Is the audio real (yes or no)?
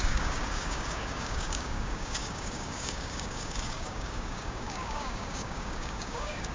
no